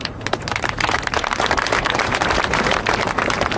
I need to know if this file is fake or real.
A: fake